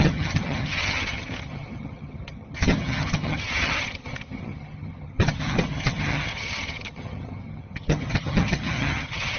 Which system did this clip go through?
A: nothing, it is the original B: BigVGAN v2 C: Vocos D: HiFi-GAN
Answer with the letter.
D